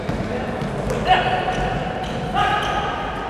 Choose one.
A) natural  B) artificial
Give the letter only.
A